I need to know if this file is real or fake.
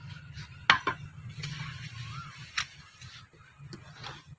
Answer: real